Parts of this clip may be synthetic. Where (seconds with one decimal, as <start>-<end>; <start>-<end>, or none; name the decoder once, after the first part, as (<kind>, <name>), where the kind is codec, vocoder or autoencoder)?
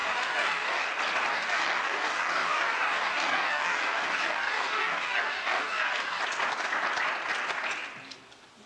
0.0-0.9 (codec, DAC); 1.3-6.2